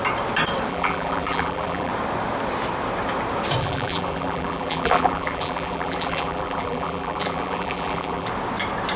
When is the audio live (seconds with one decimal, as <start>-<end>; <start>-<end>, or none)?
0.0-0.7; 1.9-3.6; 8.3-9.0